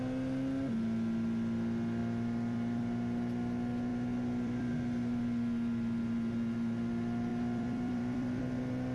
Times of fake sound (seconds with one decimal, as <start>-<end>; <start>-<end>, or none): 2.0-2.8; 3.9-4.7; 7.3-8.4

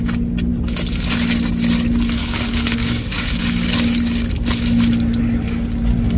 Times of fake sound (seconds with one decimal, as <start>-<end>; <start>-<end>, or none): 2.2-3.4

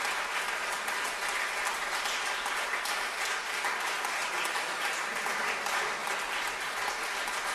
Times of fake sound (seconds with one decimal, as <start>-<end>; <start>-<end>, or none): 4.2-5.4

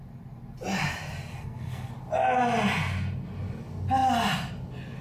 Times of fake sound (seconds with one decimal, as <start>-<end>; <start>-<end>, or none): 1.3-1.9

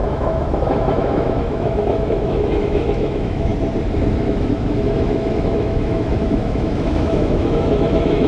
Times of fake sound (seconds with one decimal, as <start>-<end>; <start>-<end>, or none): 0.0-3.5; 4.2-8.3

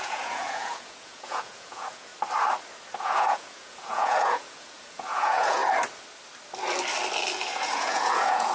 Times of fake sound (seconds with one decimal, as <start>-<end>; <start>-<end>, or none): 0.0-2.1; 3.0-5.6; 7.5-8.5

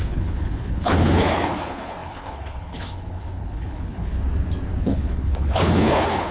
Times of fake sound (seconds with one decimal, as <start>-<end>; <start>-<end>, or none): 0.0-4.2; 4.8-6.3